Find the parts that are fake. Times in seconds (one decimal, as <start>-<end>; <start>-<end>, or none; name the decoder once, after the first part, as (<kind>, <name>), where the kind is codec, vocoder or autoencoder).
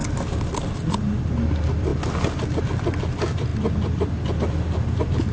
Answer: none